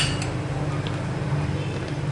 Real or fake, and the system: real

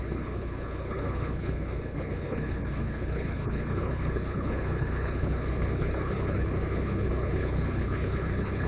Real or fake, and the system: fake, codec, HILCodec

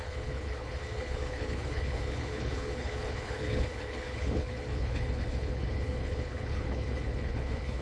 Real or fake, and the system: fake, codec, HILCodec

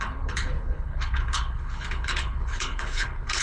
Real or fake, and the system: fake, codec, HILCodec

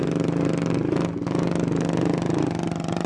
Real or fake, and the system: real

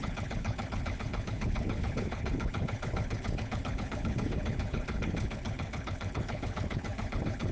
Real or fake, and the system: fake, codec, HILCodec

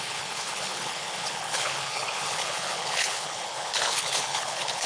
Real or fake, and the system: fake, codec, HILCodec